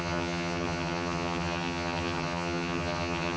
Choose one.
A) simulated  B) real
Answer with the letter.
A